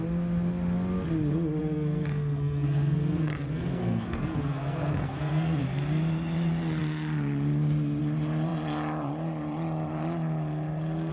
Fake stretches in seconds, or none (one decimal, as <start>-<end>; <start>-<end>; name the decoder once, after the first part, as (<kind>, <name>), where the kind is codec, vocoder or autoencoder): 1.6-5.6 (codec, SNAC)